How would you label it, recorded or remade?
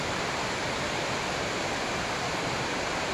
remade